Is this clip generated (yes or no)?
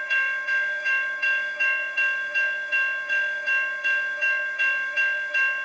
yes